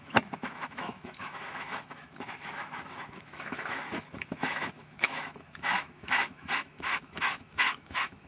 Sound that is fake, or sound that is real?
fake